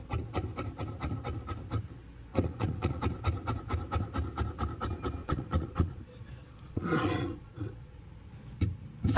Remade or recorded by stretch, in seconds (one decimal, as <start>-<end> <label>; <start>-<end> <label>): 0.0-2.3 recorded; 2.3-3.0 remade; 3.0-5.2 recorded; 5.2-8.0 remade; 8.0-9.2 recorded